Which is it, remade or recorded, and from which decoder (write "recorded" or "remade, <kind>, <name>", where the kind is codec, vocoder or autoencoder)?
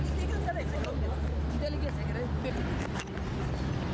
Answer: recorded